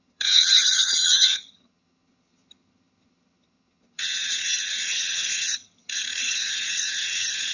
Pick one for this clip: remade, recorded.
remade